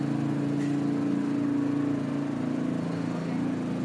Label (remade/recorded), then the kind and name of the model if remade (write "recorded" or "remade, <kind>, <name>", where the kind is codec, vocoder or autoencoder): recorded